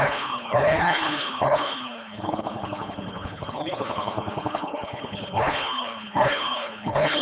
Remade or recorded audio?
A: remade